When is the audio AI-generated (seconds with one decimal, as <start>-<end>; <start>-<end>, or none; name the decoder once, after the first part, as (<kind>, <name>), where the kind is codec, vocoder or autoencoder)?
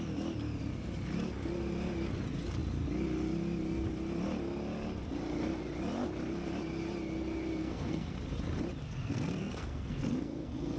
7.6-8.2 (codec, SNAC); 8.8-10.8